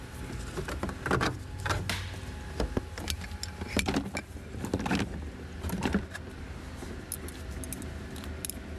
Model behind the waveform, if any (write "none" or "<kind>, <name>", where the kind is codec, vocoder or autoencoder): none